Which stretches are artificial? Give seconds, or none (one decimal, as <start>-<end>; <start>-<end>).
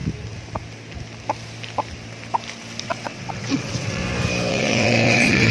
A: 2.8-4.0; 4.5-5.5